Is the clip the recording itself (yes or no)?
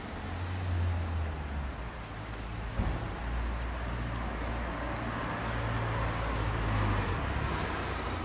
yes